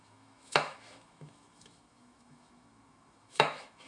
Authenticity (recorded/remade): remade